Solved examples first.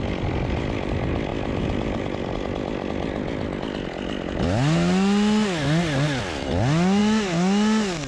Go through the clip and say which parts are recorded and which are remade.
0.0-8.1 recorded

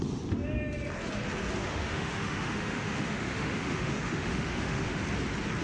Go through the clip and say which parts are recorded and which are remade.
0.0-1.6 recorded; 1.6-5.0 remade; 5.0-5.6 recorded

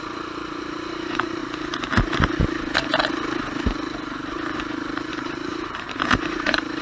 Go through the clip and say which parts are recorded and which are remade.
0.0-1.4 remade; 1.4-5.1 recorded; 5.1-6.8 remade